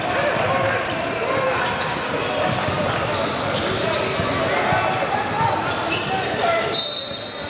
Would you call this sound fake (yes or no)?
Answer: no